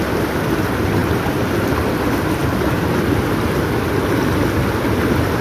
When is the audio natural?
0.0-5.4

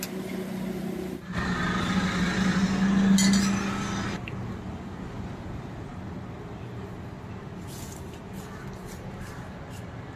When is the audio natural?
0.0-10.2

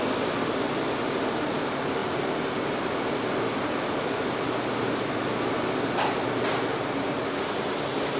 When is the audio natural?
0.0-8.2